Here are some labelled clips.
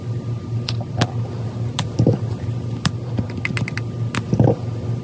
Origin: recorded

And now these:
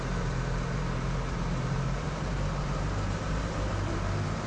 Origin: remade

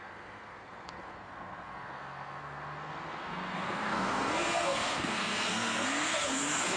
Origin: remade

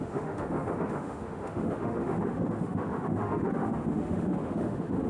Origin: remade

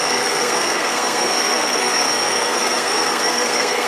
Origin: remade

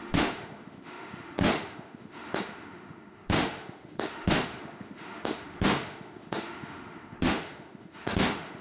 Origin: remade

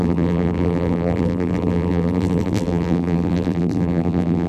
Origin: remade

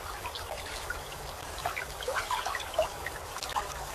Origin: remade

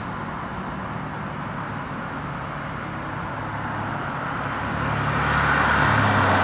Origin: recorded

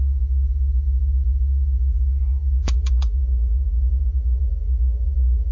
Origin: remade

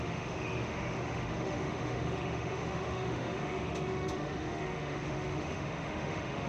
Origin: remade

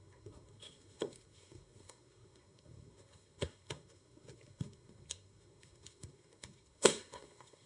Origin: remade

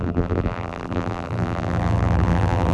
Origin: remade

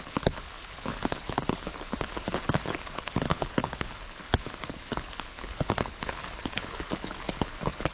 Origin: remade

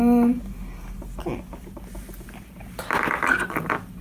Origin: recorded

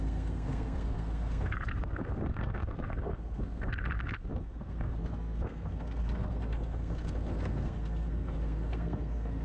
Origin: remade